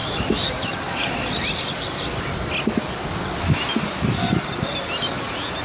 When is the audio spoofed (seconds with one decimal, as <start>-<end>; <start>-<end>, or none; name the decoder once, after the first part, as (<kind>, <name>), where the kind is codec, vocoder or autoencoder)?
0.0-1.1 (vocoder, BigVGAN v2)